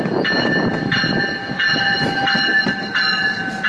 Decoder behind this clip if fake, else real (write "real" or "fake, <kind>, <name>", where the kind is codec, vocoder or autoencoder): real